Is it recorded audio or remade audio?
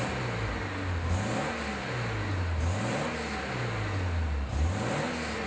recorded